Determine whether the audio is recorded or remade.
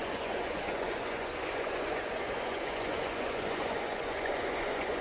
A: remade